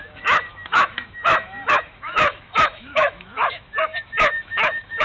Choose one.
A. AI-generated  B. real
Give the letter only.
A